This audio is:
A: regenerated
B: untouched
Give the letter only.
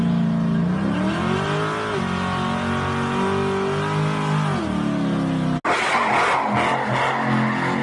B